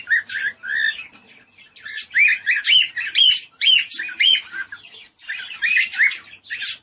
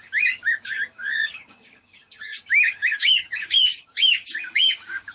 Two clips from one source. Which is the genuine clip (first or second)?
first